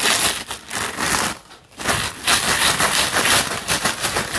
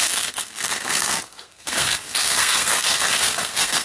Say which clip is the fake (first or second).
second